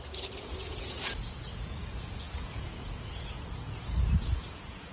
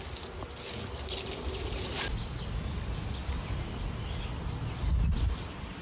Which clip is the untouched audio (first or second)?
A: second